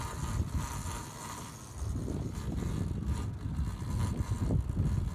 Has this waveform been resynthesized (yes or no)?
no